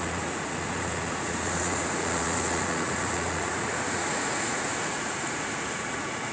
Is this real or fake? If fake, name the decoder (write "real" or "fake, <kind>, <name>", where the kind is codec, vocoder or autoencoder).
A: fake, vocoder, Vocos